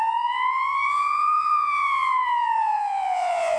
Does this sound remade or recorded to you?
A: remade